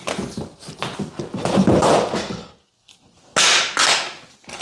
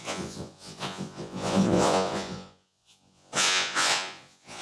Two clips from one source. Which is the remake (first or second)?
second